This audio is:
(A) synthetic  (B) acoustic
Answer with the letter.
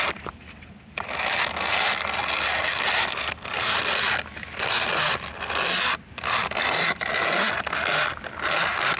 B